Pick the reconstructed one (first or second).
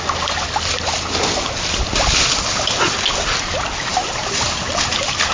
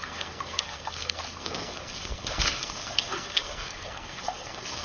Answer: second